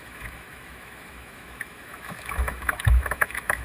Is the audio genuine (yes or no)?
no